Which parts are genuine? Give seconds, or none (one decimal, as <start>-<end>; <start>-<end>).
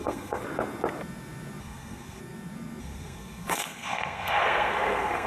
0.4-1.6; 2.2-2.8